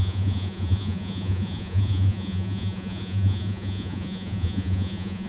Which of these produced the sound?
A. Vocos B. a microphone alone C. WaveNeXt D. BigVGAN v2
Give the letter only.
A